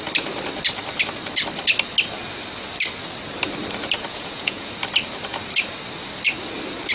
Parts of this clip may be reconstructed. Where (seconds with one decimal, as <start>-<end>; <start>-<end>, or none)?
4.1-4.7

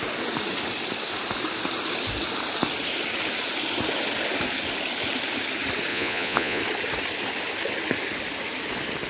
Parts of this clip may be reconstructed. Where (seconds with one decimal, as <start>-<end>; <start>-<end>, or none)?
5.9-6.6

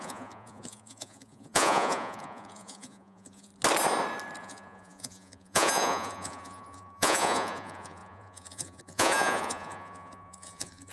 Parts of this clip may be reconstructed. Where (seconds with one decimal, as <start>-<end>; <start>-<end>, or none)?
0.0-3.5; 4.4-10.9

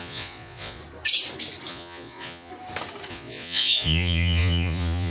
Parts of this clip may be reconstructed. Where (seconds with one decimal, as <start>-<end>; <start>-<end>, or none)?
0.0-0.8; 1.7-2.5; 3.1-5.1